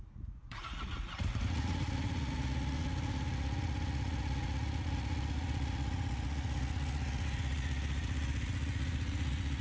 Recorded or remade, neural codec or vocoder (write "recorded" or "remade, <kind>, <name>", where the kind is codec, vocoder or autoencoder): remade, vocoder, Vocos